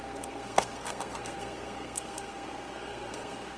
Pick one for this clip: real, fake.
fake